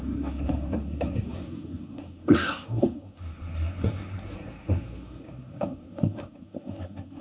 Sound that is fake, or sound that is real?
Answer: fake